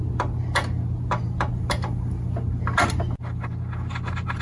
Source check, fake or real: real